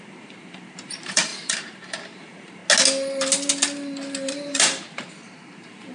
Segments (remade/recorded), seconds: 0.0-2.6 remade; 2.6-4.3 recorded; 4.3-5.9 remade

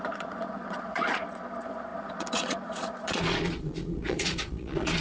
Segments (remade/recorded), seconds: 0.0-5.0 remade